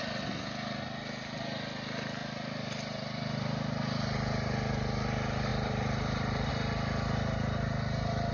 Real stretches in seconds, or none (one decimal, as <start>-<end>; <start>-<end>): 0.0-2.2; 3.8-5.5; 6.5-8.3